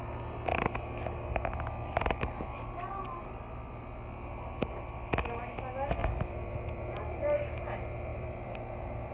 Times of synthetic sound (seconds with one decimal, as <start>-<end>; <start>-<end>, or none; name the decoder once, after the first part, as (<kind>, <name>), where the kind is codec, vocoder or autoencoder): 6.0-7.2 (vocoder, BigVGAN v2); 8.1-9.1

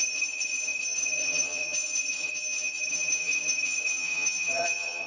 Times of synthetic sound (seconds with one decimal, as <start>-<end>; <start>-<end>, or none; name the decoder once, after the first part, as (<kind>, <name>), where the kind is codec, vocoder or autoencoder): 0.0-5.1 (vocoder, HiFi-GAN)

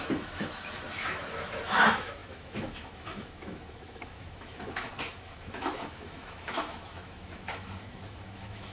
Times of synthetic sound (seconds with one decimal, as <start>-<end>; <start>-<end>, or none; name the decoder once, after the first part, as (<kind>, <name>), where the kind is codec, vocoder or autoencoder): 0.0-8.7 (autoencoder, DAC-VAE)

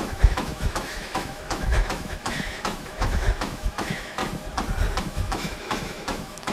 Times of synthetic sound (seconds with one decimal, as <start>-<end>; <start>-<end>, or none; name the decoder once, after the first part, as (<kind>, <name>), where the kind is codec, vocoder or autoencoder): 0.0-4.2 (autoencoder, DAC-VAE); 5.0-6.5

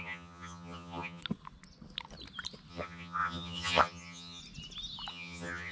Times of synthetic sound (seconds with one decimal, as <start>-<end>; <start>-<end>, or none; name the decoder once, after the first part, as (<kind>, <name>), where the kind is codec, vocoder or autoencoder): 0.0-1.2 (vocoder, HiFi-GAN); 2.7-4.4; 5.1-5.7